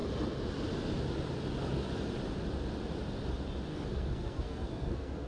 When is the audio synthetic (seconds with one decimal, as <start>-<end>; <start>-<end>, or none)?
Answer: 3.7-5.3